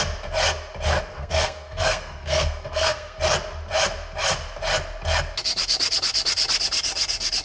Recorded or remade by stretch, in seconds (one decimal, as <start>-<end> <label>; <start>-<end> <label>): 0.0-1.1 recorded; 1.1-3.2 remade; 3.2-7.4 recorded